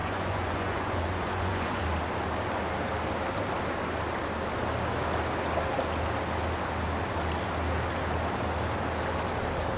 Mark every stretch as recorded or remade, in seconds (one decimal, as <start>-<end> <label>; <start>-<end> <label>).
0.0-1.8 remade; 1.8-9.8 recorded